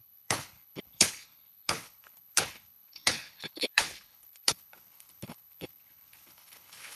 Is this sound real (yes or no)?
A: no